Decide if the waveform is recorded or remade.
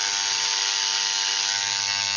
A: recorded